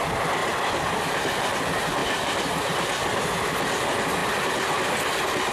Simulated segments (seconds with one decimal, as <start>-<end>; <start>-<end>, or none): 0.4-1.0; 4.2-4.7